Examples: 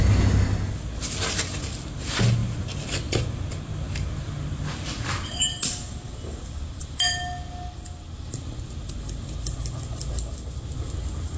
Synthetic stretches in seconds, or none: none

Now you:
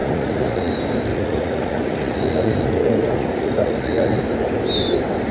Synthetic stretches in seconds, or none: 0.0-0.7 (vocoder, Vocos); 1.1-4.2

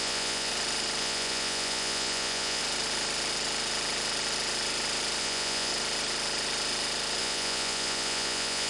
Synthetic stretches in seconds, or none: 0.0-0.5 (vocoder, Vocos); 1.0-2.6; 5.2-5.7; 7.2-8.7

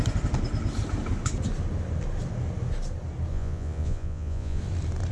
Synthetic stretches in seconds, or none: 3.3-4.6 (vocoder, Vocos)